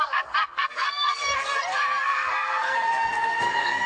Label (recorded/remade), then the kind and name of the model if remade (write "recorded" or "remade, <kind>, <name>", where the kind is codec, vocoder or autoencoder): remade, codec, SNAC